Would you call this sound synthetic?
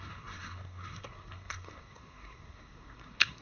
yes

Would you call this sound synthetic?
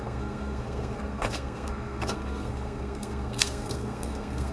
yes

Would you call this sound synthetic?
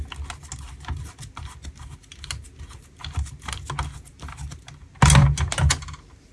no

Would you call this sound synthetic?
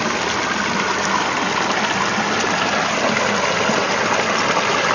no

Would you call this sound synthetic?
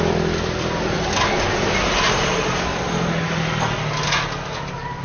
no